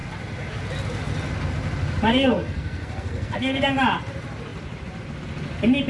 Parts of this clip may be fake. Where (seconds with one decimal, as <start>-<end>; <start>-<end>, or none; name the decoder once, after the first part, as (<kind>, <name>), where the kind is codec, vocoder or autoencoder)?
2.1-3.6 (codec, SNAC)